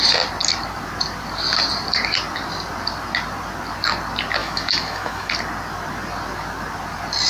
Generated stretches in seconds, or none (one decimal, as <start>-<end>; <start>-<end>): 4.4-5.3